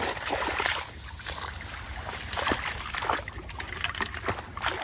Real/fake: real